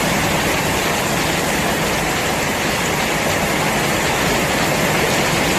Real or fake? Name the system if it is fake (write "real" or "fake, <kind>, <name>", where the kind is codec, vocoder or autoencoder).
real